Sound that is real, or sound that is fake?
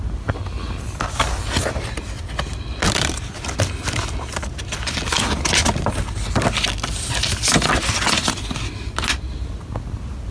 real